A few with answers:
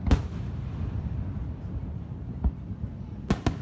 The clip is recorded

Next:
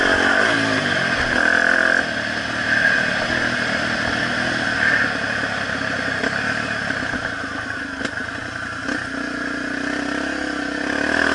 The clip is recorded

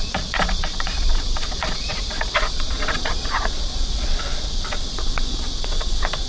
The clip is remade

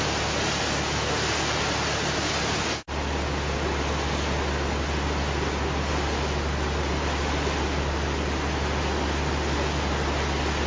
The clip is recorded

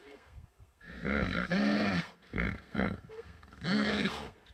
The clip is remade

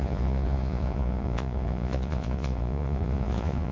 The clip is remade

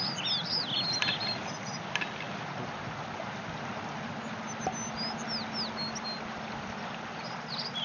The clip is recorded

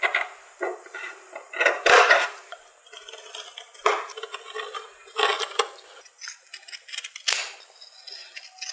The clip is recorded